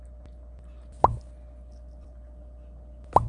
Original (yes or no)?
yes